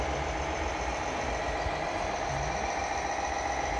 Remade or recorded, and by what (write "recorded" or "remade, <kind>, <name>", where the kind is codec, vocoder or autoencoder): recorded